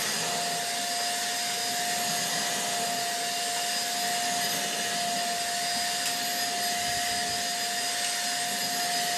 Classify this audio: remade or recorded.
recorded